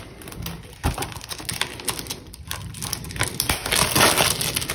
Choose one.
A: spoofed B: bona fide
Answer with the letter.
B